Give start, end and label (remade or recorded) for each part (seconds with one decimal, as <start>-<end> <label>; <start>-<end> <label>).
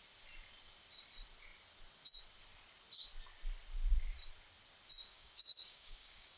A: 0.0-5.1 recorded; 5.1-6.4 remade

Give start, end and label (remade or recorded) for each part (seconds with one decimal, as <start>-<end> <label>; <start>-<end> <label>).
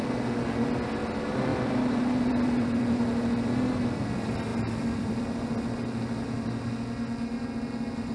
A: 0.0-1.5 recorded; 1.5-3.5 remade; 3.5-4.5 recorded; 4.5-5.2 remade; 5.2-8.1 recorded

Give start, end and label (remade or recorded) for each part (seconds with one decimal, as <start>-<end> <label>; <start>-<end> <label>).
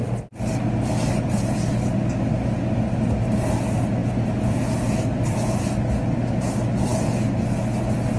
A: 0.0-8.2 recorded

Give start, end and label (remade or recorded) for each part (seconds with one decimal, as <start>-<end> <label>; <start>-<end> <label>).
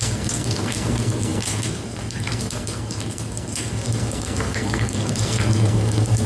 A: 0.0-6.3 remade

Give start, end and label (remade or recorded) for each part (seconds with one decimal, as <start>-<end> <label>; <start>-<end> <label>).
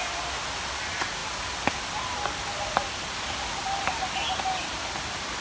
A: 0.0-5.4 recorded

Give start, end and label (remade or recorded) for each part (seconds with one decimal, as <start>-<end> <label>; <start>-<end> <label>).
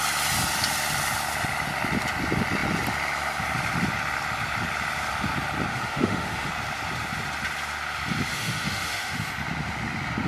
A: 0.0-5.7 recorded; 5.7-6.5 remade; 6.5-8.3 recorded; 8.3-9.3 remade; 9.3-10.3 recorded